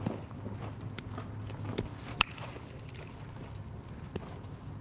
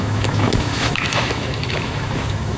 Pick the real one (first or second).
first